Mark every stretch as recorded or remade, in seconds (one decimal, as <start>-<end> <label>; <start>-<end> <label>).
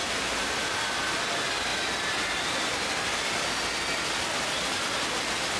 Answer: 0.0-5.6 recorded